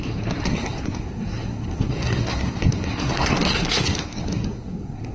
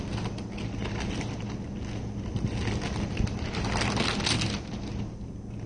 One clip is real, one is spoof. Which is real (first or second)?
second